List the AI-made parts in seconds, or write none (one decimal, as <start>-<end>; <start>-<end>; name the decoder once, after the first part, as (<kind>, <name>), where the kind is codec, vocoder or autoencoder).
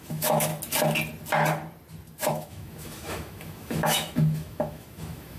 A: 0.0-0.5 (autoencoder, DAC-VAE); 2.3-5.4